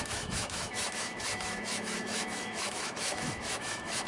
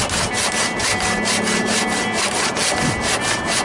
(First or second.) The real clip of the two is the second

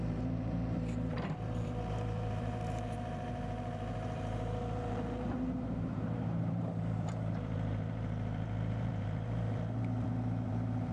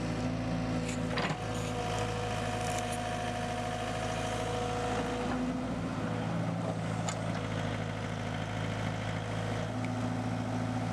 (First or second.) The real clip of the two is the second